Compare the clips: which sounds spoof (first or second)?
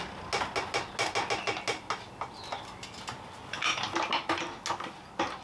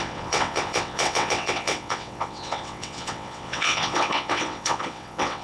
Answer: second